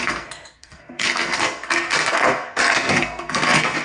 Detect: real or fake fake